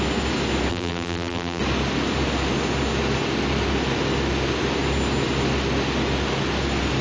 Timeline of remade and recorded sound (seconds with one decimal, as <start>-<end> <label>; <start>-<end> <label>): 0.0-0.7 recorded; 0.7-1.6 remade; 1.6-7.0 recorded